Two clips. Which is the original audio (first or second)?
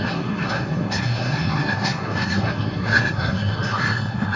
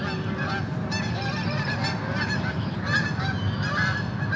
second